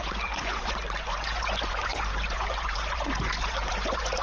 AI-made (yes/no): yes